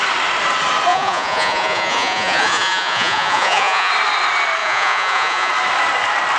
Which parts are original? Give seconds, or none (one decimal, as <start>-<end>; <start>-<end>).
0.0-0.9; 3.9-4.6; 5.5-6.4